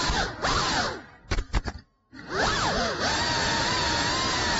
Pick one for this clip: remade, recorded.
recorded